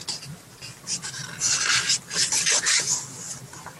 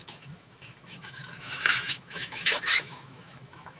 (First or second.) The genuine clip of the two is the first